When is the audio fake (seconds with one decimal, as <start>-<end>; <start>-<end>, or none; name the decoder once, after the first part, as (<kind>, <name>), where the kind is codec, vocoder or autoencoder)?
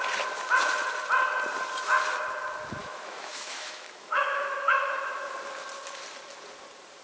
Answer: 2.8-5.2 (autoencoder, DAC-VAE)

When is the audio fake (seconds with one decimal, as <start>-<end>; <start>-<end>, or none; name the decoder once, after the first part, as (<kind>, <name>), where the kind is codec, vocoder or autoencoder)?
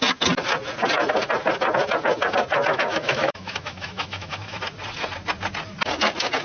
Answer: 2.7-4.6 (autoencoder, DAC-VAE)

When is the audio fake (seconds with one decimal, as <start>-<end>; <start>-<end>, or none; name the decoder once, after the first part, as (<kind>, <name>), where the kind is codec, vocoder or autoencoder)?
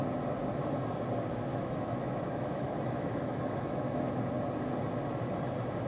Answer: 1.5-4.3 (autoencoder, DAC-VAE)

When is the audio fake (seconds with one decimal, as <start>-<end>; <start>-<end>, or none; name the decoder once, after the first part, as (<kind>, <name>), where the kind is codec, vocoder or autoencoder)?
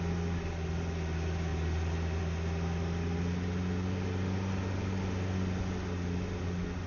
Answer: none